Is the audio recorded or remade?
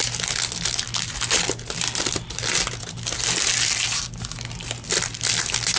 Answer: recorded